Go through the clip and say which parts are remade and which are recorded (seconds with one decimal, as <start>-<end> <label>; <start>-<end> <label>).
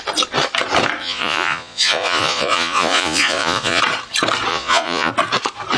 0.0-1.0 recorded; 1.0-3.8 remade; 3.8-4.5 recorded; 4.5-5.1 remade; 5.1-5.8 recorded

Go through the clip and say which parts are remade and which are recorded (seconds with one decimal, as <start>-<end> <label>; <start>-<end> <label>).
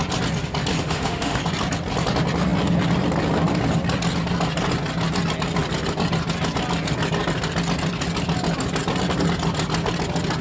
0.0-0.8 recorded; 0.8-1.4 remade; 1.4-10.4 recorded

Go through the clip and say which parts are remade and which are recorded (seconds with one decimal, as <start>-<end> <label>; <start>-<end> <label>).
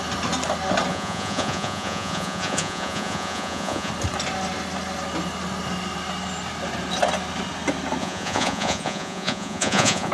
0.0-0.9 recorded; 0.9-3.9 remade; 3.9-8.0 recorded; 8.0-10.1 remade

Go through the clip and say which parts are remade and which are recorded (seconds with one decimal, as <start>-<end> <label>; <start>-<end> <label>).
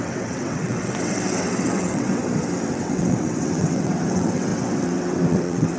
0.0-2.2 remade; 2.2-2.7 recorded; 2.7-5.8 remade